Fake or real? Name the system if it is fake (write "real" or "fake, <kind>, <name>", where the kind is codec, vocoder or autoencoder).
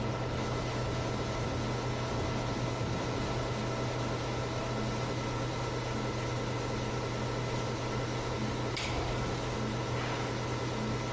real